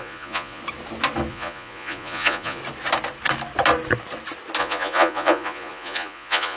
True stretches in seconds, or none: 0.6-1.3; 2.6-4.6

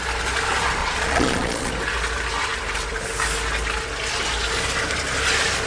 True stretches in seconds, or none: 0.0-0.8; 1.7-5.7